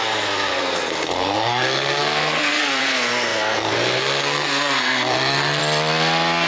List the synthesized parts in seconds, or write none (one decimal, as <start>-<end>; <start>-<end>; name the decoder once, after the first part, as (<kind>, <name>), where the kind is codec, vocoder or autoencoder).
0.0-5.6 (codec, SNAC)